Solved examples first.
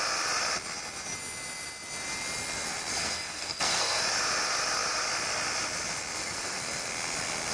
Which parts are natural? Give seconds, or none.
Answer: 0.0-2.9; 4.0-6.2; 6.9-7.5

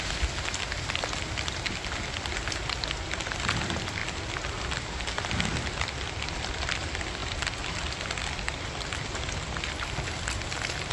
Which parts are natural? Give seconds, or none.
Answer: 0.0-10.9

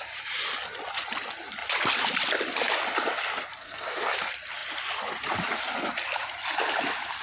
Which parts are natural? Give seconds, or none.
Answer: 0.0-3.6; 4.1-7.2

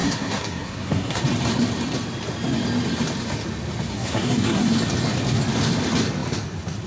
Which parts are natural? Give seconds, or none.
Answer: 1.2-3.9; 4.7-6.9

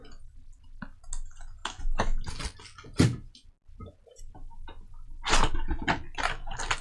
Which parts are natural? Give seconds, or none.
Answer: 0.0-6.8

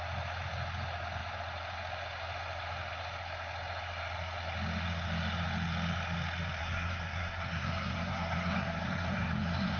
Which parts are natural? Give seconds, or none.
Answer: 0.0-6.6

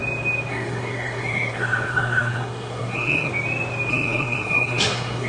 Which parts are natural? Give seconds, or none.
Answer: 0.0-0.5; 3.3-3.9

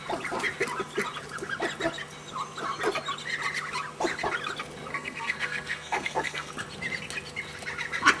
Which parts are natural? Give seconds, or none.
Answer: 0.0-4.9; 6.5-8.2